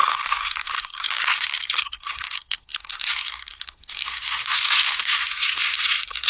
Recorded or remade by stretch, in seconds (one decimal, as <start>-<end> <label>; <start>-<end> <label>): 0.0-6.3 remade